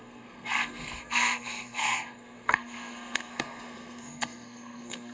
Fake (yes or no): yes